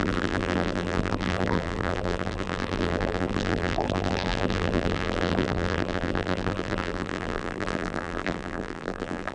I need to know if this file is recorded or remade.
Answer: remade